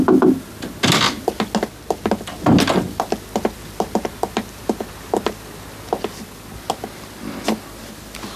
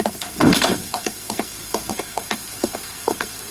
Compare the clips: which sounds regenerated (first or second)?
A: second